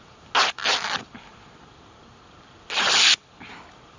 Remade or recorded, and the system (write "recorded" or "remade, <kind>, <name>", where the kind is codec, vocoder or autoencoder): recorded